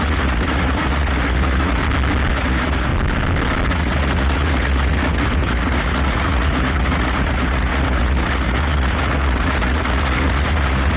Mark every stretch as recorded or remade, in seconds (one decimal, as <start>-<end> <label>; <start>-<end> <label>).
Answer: 0.0-1.8 remade; 1.8-2.3 recorded; 2.3-2.9 remade; 2.9-3.7 recorded; 3.7-11.0 remade